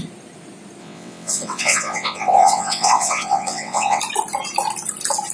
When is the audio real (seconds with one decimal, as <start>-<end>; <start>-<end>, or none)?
0.0-0.8; 4.0-5.3